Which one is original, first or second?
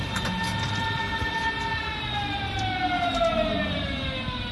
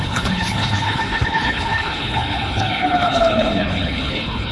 first